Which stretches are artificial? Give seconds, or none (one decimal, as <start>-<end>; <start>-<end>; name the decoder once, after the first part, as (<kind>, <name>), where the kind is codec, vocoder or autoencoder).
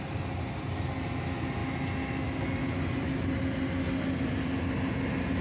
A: none